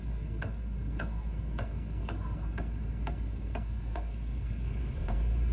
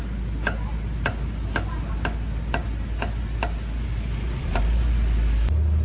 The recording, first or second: second